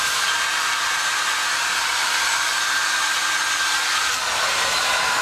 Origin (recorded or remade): remade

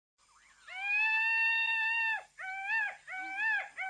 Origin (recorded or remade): recorded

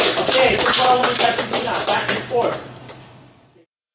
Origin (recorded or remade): remade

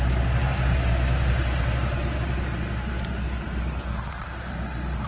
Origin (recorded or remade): recorded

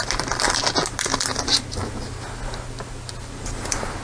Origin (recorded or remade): recorded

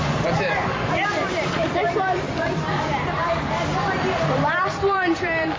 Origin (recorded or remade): remade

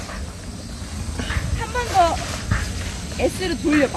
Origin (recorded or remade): recorded